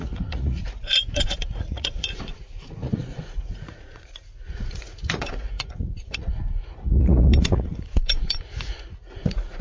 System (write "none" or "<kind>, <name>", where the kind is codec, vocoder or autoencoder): vocoder, Vocos